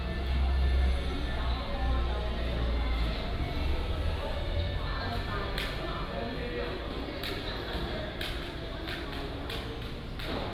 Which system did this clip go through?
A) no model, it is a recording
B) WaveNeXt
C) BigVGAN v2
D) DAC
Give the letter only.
A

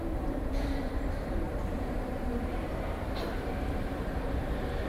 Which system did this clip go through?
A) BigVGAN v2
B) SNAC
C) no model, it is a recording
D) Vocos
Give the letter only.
A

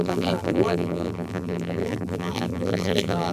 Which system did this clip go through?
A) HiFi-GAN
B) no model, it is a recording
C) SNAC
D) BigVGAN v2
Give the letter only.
D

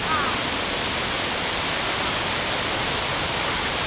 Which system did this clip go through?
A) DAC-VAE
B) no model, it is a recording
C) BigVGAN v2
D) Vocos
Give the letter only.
B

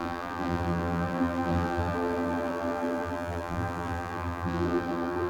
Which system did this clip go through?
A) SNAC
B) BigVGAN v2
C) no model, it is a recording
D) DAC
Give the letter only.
B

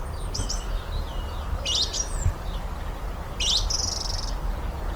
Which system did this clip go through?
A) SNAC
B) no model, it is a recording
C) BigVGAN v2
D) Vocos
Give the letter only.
B